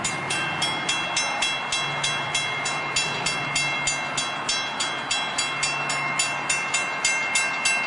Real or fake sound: real